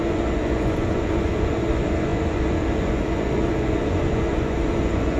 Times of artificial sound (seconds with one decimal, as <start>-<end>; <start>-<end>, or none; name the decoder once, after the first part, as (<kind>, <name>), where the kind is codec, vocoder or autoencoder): 0.0-5.2 (vocoder, Vocos)